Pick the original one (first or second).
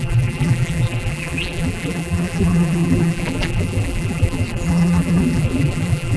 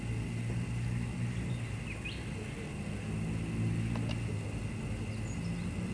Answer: second